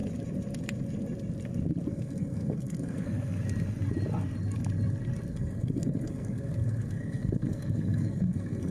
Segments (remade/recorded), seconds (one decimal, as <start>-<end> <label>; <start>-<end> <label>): 0.0-1.9 recorded; 1.9-3.4 remade; 3.4-5.3 recorded; 5.3-8.7 remade